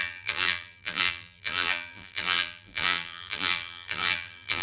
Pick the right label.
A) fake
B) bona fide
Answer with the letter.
A